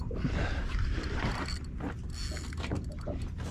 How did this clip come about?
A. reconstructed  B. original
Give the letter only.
B